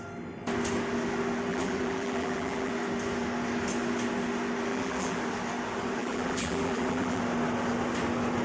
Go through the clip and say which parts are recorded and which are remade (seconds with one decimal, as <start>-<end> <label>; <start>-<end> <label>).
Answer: 0.0-1.5 recorded; 1.5-2.7 remade; 2.7-4.7 recorded; 4.7-5.2 remade; 5.2-6.0 recorded; 6.0-7.2 remade; 7.2-8.4 recorded